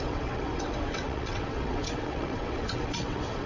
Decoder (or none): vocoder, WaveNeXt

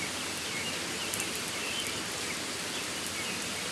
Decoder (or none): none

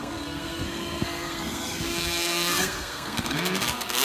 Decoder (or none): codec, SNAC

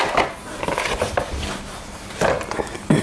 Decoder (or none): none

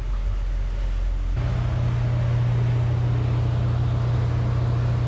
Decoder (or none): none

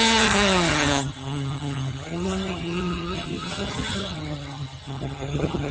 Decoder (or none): vocoder, HiFi-GAN